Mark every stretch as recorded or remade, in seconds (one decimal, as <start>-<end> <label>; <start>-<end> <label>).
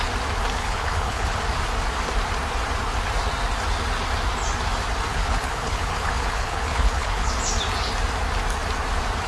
0.0-0.6 recorded; 0.6-1.4 remade; 1.4-5.1 recorded; 5.1-7.3 remade; 7.3-9.3 recorded